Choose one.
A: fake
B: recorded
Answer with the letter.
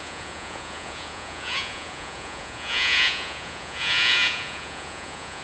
A